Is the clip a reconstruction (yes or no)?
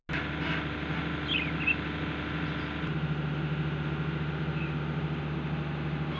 no